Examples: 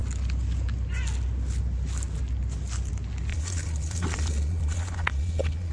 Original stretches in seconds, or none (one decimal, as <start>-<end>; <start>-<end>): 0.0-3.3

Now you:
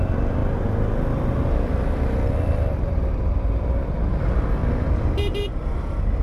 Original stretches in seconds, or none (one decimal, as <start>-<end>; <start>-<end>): 0.0-4.6; 5.1-6.2

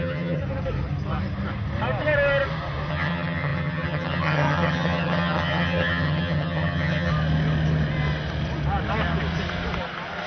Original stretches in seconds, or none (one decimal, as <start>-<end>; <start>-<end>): 0.4-2.9; 7.1-10.3

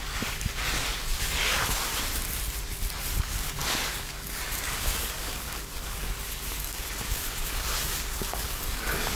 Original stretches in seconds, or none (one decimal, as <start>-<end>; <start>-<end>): 1.9-3.2

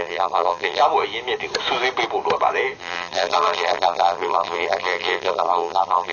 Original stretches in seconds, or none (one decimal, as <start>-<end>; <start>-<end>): 0.8-2.8